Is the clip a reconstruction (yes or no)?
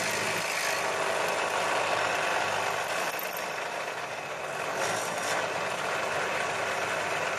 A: no